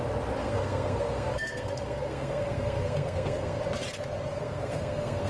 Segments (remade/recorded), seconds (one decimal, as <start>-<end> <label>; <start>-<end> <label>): 0.0-0.4 recorded; 0.4-3.6 remade; 3.6-4.3 recorded; 4.3-5.3 remade